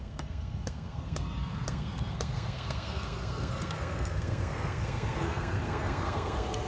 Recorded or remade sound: remade